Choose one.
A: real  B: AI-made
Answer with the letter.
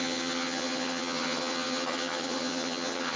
B